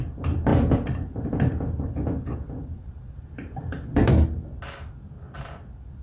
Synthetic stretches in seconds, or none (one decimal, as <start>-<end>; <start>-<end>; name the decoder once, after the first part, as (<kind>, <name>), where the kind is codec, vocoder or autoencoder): 0.5-4.1 (vocoder, BigVGAN v2)